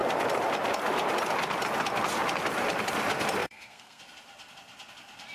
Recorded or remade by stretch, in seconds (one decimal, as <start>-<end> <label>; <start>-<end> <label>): 0.0-3.4 recorded; 3.4-4.0 remade; 4.0-5.3 recorded